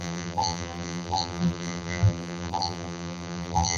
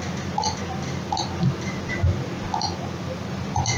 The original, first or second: second